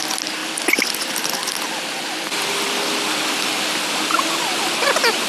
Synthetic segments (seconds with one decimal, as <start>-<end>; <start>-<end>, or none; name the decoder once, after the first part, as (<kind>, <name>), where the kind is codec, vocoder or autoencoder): 0.4-3.6 (vocoder, BigVGAN v2)